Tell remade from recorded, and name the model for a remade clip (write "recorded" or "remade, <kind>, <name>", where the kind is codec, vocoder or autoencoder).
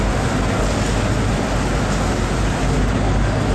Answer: recorded